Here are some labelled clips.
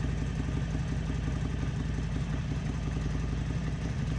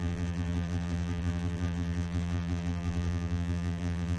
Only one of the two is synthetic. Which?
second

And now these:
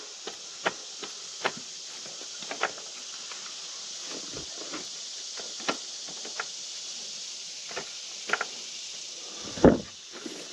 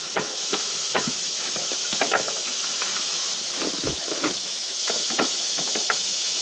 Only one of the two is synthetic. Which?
second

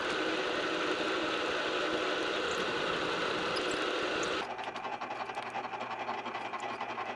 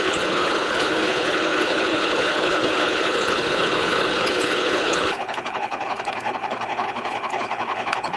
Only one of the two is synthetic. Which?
second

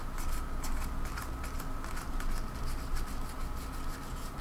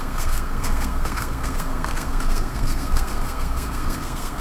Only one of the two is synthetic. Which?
second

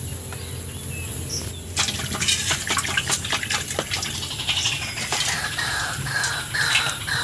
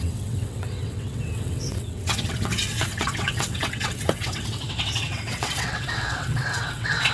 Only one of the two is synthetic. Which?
second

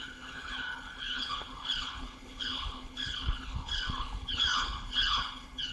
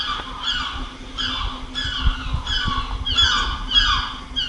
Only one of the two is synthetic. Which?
first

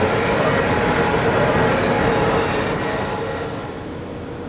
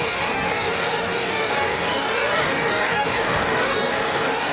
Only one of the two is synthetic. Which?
second